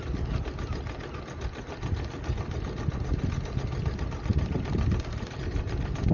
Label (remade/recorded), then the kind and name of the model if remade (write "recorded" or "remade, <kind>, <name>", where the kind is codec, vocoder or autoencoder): recorded